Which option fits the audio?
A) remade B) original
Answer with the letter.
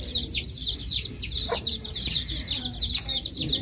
A